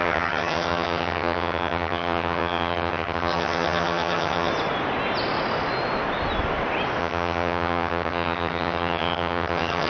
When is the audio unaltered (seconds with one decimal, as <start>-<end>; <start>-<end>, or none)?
4.5-7.0